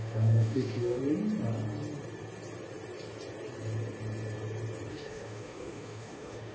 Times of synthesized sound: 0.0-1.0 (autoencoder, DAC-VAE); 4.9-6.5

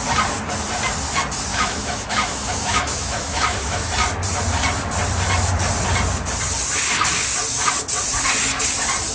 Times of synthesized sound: 1.5-3.9 (autoencoder, DAC-VAE)

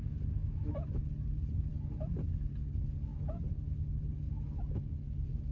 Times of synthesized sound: 0.4-1.0 (autoencoder, DAC-VAE)

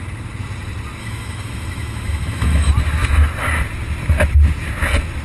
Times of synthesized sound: 1.0-2.7 (autoencoder, DAC-VAE)

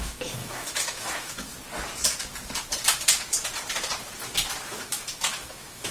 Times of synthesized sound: 0.0-1.5 (autoencoder, DAC-VAE); 4.8-5.9

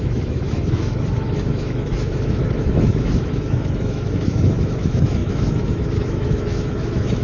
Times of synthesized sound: 0.0-7.2 (autoencoder, DAC-VAE)

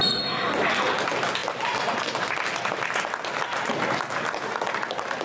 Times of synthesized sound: none